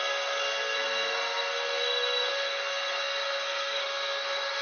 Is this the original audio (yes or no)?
no